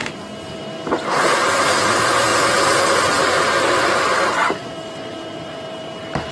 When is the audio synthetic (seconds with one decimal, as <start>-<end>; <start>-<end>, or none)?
0.0-0.6; 2.3-6.3